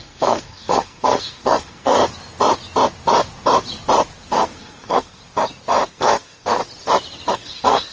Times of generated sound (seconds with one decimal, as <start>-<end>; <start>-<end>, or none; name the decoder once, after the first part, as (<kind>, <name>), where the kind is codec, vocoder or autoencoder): 0.0-2.0 (codec, SNAC); 4.3-5.2; 5.9-6.6; 7.3-7.9